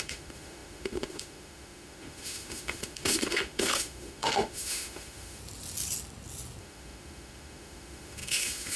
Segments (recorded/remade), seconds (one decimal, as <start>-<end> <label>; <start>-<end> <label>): 0.0-5.4 remade; 5.4-6.6 recorded; 6.6-8.8 remade